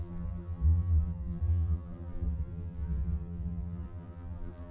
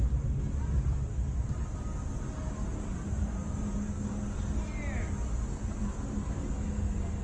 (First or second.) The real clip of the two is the second